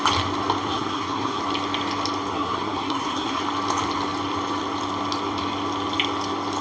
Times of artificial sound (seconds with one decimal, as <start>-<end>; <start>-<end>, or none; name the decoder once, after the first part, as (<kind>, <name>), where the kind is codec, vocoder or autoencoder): 0.7-1.4 (codec, SNAC); 2.3-3.4